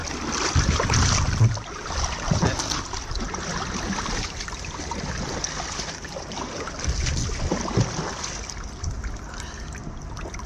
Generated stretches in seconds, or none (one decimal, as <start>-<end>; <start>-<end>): none

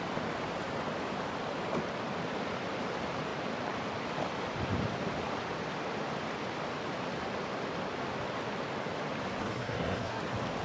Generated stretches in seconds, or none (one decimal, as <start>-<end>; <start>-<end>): 9.4-10.2